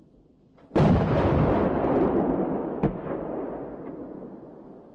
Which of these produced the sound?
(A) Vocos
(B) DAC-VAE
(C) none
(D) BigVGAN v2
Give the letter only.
C